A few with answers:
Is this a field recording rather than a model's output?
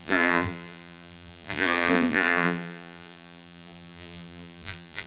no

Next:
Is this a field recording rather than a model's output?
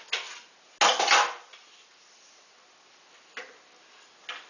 yes